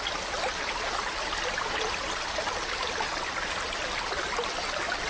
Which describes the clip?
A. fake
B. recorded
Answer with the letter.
B